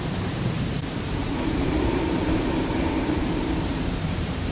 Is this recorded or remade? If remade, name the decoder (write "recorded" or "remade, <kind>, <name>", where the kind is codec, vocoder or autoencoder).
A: remade, vocoder, BigVGAN v2